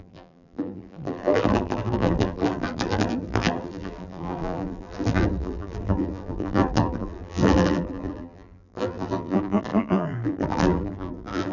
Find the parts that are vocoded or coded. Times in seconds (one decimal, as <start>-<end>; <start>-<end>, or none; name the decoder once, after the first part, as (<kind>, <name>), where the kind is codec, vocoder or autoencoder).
0.0-11.5 (vocoder, BigVGAN v2)